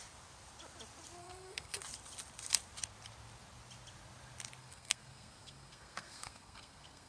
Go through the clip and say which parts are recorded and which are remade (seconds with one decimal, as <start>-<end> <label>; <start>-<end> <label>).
0.0-1.2 recorded; 1.2-1.8 remade; 1.8-4.6 recorded; 4.6-7.1 remade